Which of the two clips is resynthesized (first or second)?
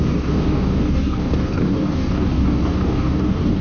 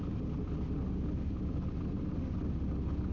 first